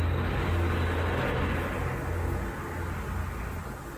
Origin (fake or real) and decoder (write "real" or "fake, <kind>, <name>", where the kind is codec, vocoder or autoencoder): real